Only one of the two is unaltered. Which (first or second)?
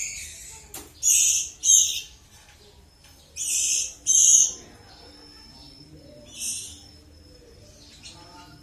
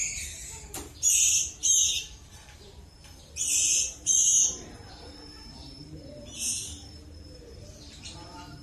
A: first